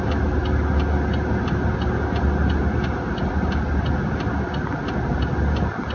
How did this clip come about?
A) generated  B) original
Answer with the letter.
B